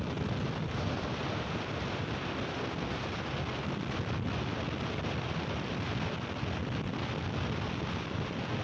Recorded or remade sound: recorded